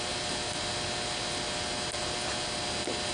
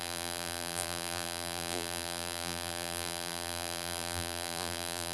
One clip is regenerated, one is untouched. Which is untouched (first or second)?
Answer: first